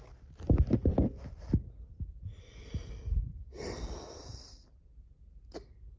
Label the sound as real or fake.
real